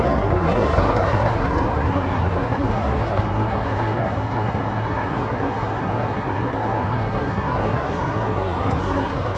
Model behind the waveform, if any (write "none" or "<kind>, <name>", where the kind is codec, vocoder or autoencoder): codec, SNAC